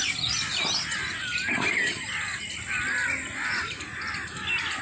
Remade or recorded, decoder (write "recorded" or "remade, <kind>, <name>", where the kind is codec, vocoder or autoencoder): remade, vocoder, BigVGAN v2